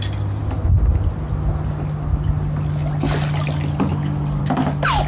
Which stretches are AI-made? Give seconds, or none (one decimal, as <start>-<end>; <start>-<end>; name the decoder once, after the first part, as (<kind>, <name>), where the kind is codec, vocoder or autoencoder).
3.9-4.4 (codec, DAC)